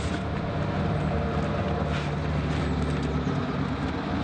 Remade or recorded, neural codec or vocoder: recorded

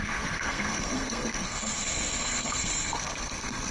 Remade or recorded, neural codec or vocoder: remade, codec, SNAC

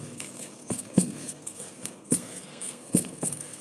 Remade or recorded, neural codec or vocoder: remade, codec, SNAC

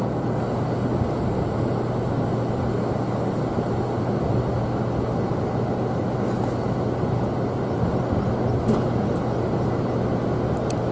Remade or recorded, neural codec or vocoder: recorded